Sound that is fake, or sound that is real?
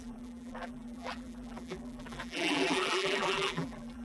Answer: fake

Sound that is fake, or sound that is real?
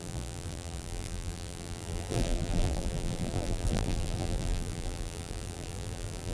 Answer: fake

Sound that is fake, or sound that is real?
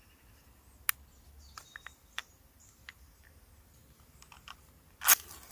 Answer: real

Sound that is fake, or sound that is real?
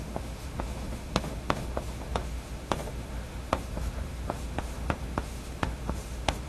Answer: fake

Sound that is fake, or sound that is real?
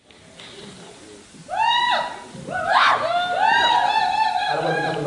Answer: real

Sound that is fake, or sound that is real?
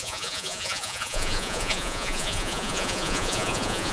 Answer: fake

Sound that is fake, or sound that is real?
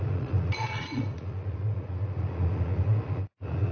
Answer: fake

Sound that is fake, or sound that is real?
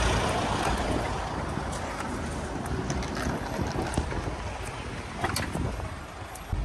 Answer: real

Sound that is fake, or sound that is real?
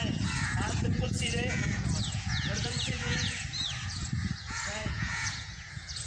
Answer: fake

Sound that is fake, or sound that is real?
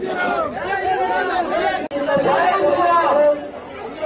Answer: real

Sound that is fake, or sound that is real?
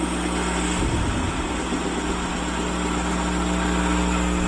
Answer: real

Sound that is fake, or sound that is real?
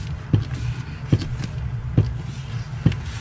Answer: real